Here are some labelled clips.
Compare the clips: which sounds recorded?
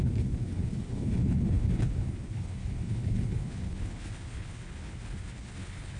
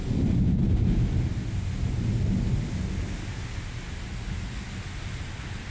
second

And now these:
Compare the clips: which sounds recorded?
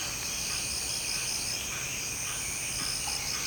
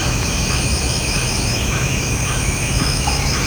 first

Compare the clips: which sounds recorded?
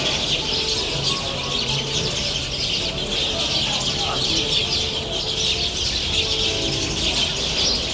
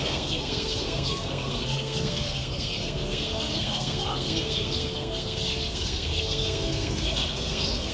first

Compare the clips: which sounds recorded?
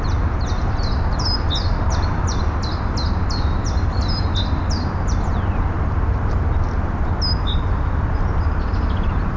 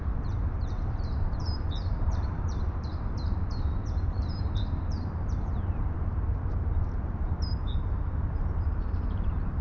first